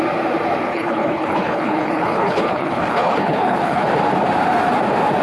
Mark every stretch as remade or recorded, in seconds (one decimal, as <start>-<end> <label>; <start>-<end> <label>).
0.0-0.7 recorded; 0.7-3.8 remade; 3.8-5.2 recorded